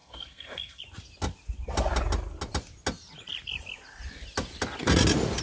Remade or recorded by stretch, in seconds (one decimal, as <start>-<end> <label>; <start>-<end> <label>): 0.0-0.8 remade; 0.8-5.4 recorded